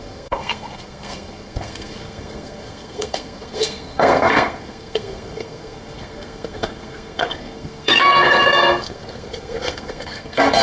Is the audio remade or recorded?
remade